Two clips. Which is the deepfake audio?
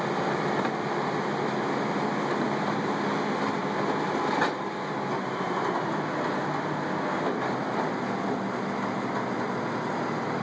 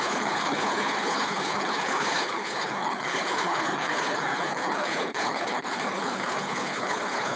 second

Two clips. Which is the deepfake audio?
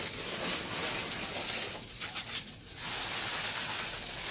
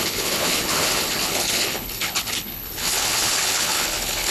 second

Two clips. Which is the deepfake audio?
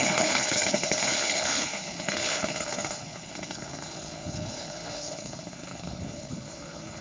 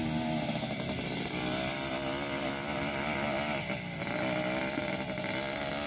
first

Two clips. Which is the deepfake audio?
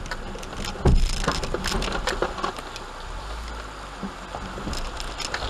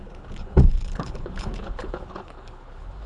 second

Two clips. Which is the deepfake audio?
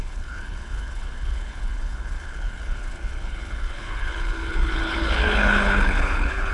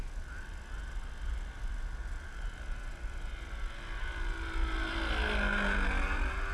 first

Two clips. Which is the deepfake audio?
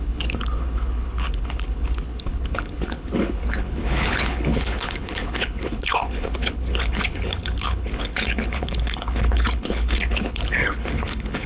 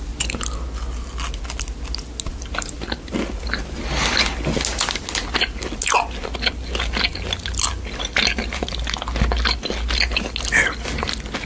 first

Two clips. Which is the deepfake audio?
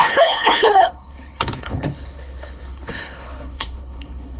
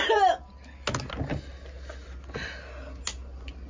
first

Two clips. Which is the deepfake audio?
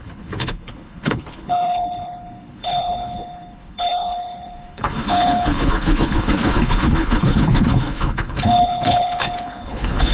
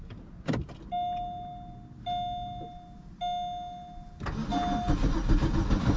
first